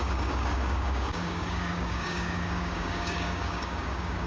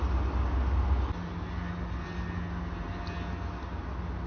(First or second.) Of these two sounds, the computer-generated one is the first